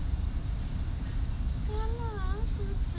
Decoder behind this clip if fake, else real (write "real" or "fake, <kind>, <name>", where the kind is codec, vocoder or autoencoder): real